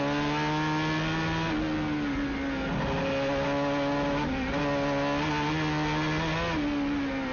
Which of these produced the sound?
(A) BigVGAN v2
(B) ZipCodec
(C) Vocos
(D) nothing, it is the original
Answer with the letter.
D